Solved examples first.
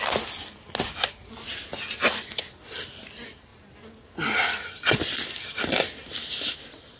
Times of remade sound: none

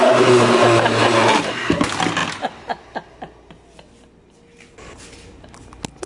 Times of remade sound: none

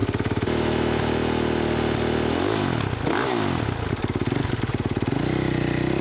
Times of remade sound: none

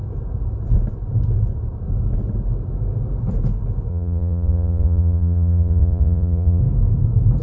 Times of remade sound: 3.9-6.6 (vocoder, Vocos)

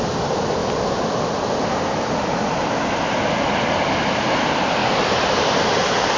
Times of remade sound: 4.8-5.8 (vocoder, BigVGAN v2)

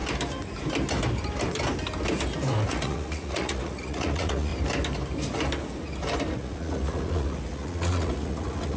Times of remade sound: 2.7-4.5 (vocoder, Vocos); 6.3-8.8

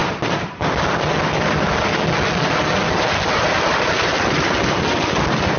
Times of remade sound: none

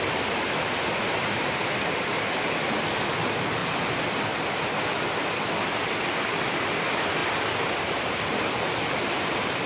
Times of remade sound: 1.2-3.1 (vocoder, BigVGAN v2); 3.6-5.2